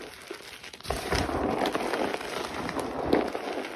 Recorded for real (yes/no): yes